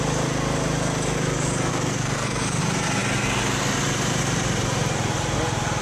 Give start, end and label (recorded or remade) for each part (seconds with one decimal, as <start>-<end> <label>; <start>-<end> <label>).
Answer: 0.0-1.7 recorded; 1.7-2.6 remade; 2.6-5.8 recorded